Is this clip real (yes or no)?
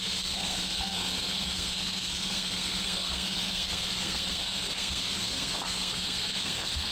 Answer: no